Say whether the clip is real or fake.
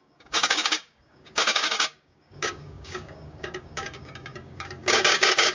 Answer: fake